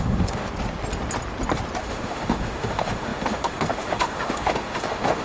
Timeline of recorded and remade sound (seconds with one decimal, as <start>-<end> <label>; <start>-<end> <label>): 0.0-0.4 remade; 0.4-1.8 recorded; 1.8-5.2 remade